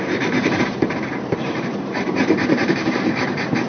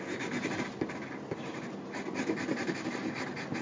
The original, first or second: second